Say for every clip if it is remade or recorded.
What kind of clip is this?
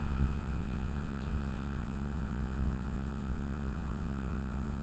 remade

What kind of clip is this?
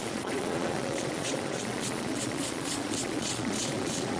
remade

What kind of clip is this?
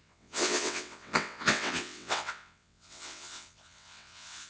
remade